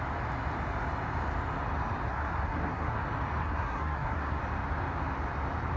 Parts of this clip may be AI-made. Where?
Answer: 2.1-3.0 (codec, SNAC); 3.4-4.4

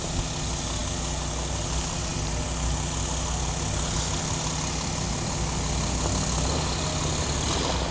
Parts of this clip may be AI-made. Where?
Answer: none

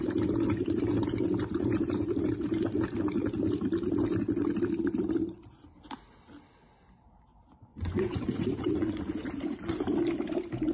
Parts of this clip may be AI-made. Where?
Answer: 7.7-9.7 (vocoder, Vocos)

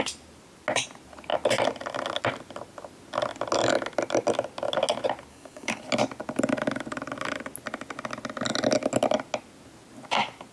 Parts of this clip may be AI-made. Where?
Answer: 5.3-5.8 (codec, DAC)

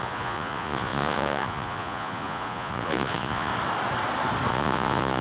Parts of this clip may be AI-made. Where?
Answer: 0.0-3.5 (vocoder, Vocos); 4.5-5.2